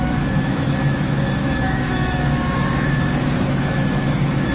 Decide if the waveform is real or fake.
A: fake